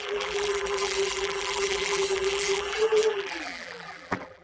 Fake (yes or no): yes